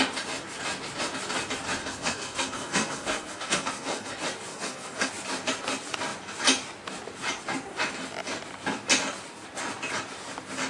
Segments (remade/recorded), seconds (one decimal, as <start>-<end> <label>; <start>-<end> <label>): 0.0-1.8 recorded; 1.8-4.1 remade; 4.1-4.5 recorded; 4.5-5.1 remade; 5.1-10.7 recorded